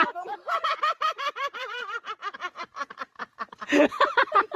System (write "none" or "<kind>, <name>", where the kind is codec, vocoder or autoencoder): vocoder, Vocos